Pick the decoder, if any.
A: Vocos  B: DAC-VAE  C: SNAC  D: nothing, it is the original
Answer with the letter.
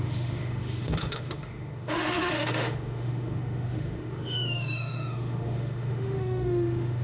B